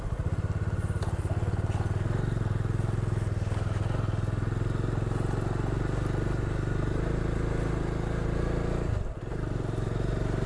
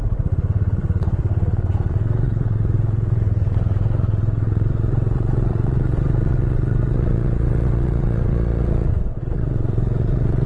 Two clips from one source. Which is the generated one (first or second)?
second